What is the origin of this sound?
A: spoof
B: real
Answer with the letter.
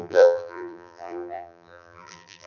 A